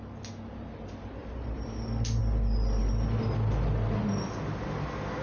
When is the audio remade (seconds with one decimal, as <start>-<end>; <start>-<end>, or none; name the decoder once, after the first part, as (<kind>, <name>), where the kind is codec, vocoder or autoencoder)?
none